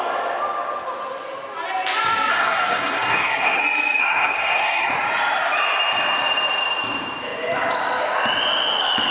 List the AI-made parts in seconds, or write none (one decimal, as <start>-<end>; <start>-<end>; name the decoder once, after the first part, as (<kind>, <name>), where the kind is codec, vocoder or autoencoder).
2.3-3.6 (codec, SNAC); 4.0-4.9